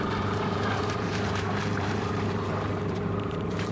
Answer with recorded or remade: remade